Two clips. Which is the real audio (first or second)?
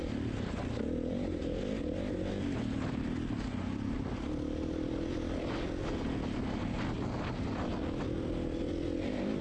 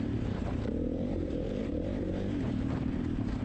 first